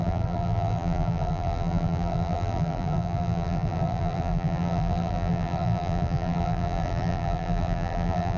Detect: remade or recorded remade